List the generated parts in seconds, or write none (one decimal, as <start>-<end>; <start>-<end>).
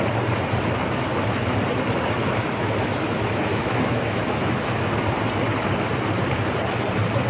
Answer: 2.2-4.8